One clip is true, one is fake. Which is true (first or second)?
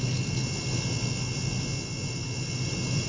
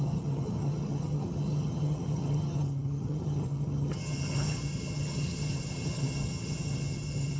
first